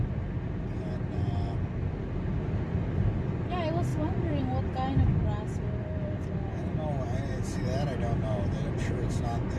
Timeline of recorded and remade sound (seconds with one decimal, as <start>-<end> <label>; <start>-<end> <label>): 0.0-9.6 recorded